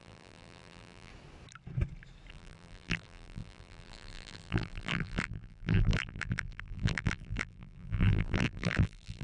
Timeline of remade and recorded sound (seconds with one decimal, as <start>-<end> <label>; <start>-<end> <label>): 0.0-1.1 remade; 1.1-2.3 recorded; 2.3-9.2 remade